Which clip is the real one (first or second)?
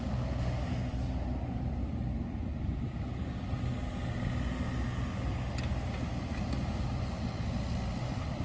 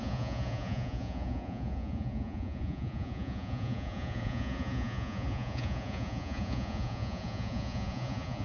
first